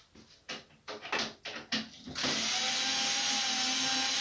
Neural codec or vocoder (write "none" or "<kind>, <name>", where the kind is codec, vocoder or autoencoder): none